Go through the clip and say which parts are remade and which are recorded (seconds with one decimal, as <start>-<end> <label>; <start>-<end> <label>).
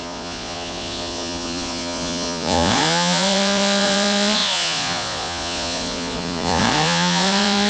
0.0-7.7 remade